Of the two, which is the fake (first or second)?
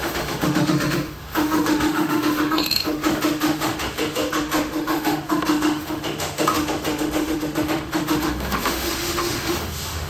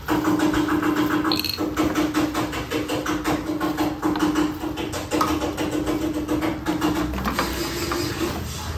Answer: first